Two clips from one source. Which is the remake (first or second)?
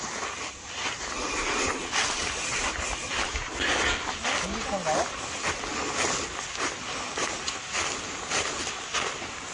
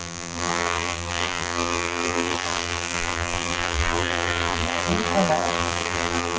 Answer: second